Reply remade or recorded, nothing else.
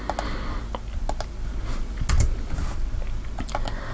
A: recorded